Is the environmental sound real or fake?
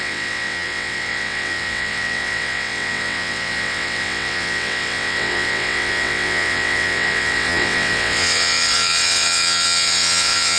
fake